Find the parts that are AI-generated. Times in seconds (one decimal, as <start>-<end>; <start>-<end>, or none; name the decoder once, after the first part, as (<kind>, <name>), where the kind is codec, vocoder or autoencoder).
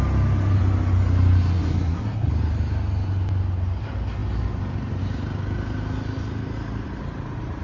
1.5-2.3 (codec, SNAC)